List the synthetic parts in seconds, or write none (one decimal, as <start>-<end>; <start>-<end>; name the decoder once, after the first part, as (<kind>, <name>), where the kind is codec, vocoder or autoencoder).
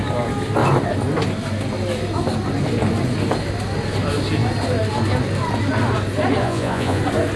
6.4-7.0 (vocoder, Vocos)